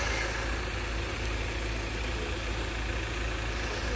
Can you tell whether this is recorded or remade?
recorded